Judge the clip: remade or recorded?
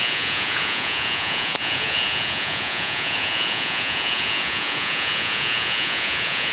remade